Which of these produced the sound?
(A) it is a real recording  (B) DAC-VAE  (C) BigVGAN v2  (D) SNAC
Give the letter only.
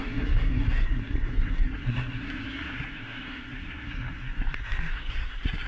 D